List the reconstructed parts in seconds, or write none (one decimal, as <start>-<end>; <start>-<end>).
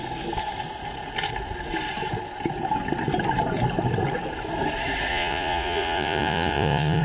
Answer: 5.1-7.0